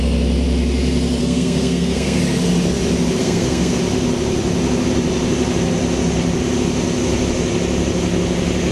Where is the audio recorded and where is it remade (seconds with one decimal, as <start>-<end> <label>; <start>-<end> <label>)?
0.0-1.2 recorded; 1.2-2.2 remade; 2.2-3.2 recorded; 3.2-3.8 remade; 3.8-8.7 recorded